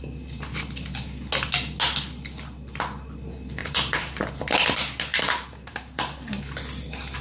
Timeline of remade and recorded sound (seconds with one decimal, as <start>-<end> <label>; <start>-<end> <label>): 0.0-3.6 recorded; 3.6-4.4 remade; 4.4-5.1 recorded; 5.1-6.3 remade; 6.3-7.2 recorded